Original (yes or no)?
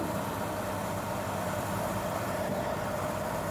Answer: no